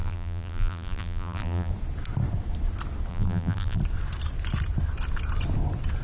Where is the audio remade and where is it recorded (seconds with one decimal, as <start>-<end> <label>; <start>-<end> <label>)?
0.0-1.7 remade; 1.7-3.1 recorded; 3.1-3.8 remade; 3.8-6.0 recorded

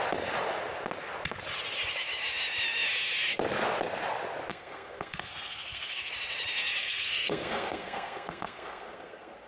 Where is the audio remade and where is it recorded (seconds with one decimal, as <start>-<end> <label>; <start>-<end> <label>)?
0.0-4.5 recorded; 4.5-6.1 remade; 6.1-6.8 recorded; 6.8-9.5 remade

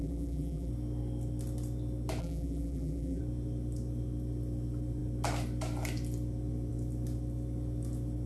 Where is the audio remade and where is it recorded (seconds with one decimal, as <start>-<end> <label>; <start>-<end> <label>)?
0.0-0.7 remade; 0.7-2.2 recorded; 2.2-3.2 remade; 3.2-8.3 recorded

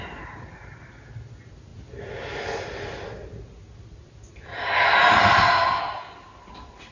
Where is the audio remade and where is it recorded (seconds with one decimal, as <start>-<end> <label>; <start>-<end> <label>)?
0.0-6.9 recorded